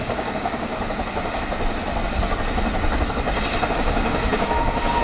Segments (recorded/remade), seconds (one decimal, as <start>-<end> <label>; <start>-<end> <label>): 0.0-0.7 remade; 0.7-3.7 recorded; 3.7-5.0 remade